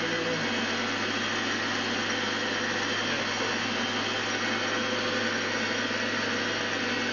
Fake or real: real